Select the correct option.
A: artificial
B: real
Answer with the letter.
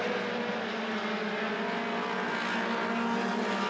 B